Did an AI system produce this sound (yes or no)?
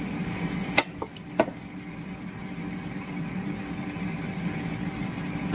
no